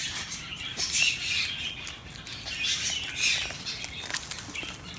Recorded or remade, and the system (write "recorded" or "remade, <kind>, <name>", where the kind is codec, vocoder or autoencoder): recorded